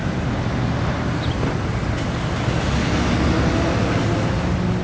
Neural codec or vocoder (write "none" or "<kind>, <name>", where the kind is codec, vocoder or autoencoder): none